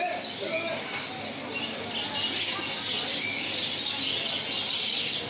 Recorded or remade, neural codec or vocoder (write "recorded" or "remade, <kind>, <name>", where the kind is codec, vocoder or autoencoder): recorded